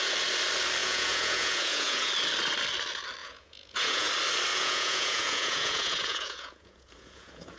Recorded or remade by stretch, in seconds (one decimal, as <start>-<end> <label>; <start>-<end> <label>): 0.0-0.8 recorded; 0.8-2.1 remade; 2.1-3.2 recorded; 3.2-4.1 remade; 4.1-4.5 recorded; 4.5-7.6 remade